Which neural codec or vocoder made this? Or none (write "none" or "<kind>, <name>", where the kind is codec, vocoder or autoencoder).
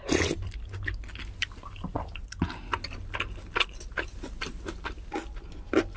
none